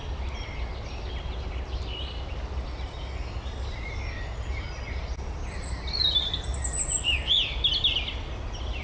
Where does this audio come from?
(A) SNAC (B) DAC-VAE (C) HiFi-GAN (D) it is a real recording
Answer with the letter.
D